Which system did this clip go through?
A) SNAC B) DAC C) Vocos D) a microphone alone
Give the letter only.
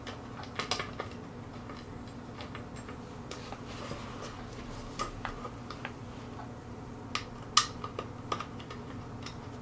D